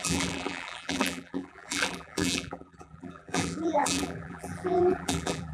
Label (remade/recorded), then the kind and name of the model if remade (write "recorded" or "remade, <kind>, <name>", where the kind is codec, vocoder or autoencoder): remade, vocoder, BigVGAN v2